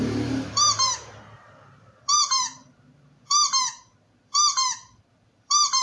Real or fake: fake